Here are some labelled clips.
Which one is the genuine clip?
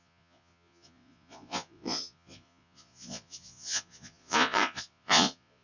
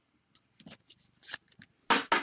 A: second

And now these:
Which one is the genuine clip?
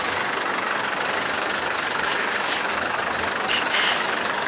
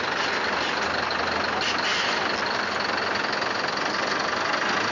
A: second